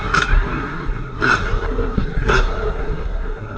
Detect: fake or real fake